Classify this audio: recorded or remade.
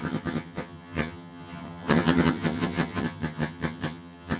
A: remade